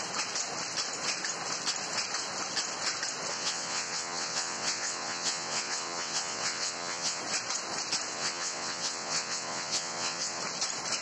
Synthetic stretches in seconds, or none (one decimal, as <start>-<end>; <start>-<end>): 3.3-7.2; 8.1-10.4

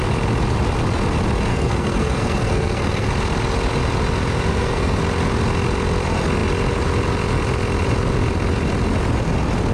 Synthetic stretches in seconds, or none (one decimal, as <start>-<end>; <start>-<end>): 1.5-3.1; 4.5-5.0

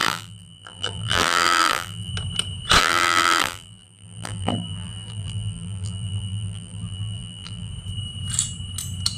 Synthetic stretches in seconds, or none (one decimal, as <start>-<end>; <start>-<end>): 0.0-2.1; 2.8-7.7